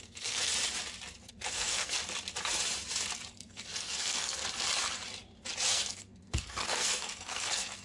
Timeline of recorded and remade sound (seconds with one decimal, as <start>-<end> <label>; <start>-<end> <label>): 0.0-0.5 remade; 0.5-1.3 recorded; 1.3-2.0 remade; 2.0-3.3 recorded; 3.3-4.4 remade; 4.4-5.7 recorded; 5.7-7.8 remade

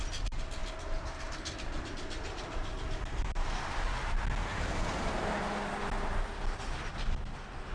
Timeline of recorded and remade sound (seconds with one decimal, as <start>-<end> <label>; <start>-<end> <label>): 0.0-7.7 recorded

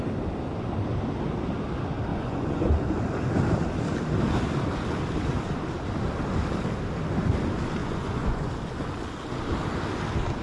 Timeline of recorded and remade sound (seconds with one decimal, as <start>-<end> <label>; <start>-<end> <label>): 0.0-2.1 recorded; 2.1-2.8 remade; 2.8-7.8 recorded; 7.8-8.5 remade; 8.5-10.4 recorded

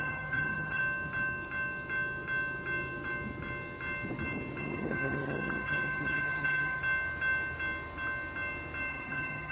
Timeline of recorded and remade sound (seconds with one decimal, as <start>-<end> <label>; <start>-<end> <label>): 0.0-0.8 remade; 0.8-4.6 recorded; 4.6-6.8 remade; 6.8-8.9 recorded; 8.9-9.5 remade